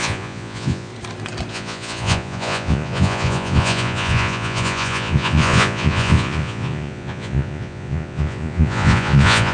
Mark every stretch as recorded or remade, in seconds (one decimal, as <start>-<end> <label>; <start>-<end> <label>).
0.0-0.9 remade; 0.9-1.5 recorded; 1.5-9.5 remade